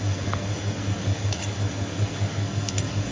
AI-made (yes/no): yes